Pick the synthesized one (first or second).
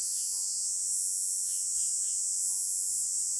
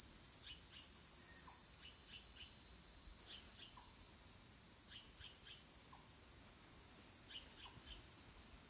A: first